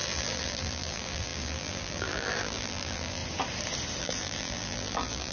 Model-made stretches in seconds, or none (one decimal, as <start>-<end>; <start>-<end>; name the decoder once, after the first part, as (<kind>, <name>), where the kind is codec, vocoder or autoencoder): 0.0-3.2 (vocoder, BigVGAN v2); 4.0-5.3